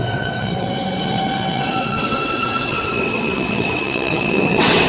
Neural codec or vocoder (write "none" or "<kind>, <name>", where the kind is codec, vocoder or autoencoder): vocoder, WaveNeXt